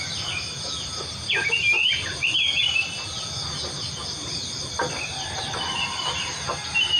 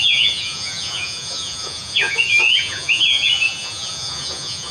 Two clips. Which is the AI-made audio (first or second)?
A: second